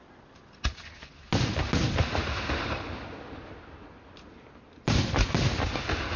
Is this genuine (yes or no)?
yes